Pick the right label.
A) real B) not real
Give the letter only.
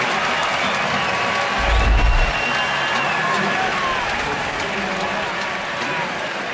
A